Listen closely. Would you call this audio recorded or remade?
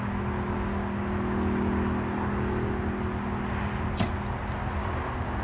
recorded